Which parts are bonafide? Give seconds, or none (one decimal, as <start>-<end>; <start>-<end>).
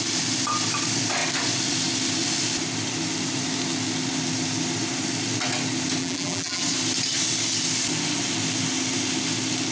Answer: 0.0-6.0; 6.6-9.7